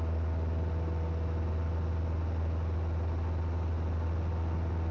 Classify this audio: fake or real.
real